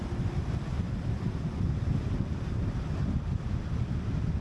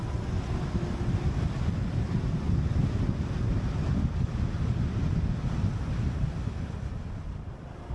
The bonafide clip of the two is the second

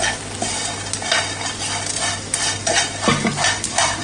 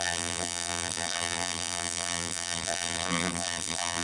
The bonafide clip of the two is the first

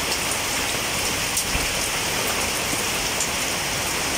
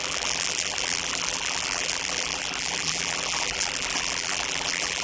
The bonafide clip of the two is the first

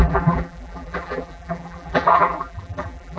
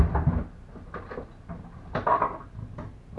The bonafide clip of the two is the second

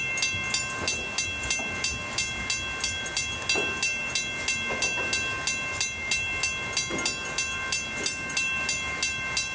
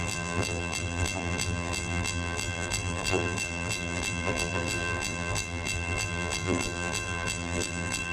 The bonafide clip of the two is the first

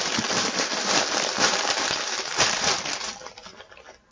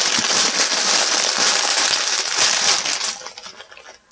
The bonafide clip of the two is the second